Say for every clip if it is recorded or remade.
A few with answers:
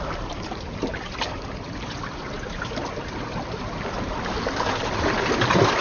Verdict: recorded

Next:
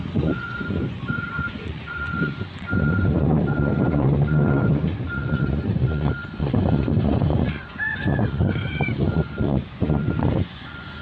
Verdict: remade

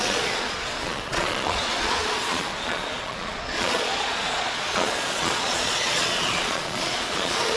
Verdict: remade